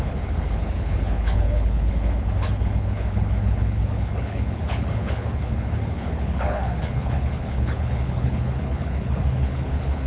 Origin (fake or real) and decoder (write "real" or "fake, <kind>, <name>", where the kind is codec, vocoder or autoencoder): fake, codec, HILCodec